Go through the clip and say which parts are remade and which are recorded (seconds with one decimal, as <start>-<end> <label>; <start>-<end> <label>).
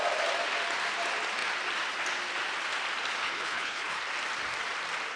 0.0-3.2 recorded; 3.2-4.0 remade; 4.0-5.2 recorded